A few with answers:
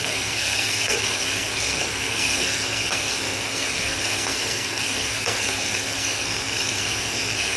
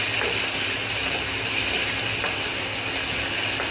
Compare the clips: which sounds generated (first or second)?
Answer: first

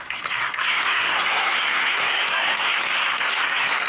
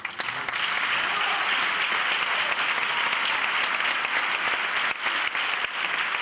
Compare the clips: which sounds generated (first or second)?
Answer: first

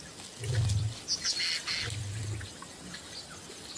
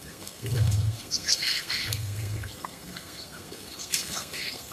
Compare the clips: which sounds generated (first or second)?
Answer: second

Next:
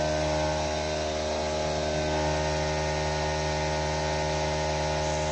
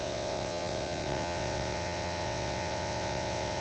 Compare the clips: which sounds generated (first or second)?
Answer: second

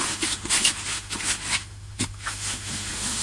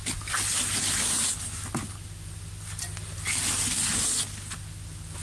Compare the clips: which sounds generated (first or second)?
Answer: first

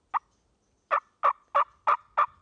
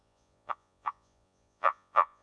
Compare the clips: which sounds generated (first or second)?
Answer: second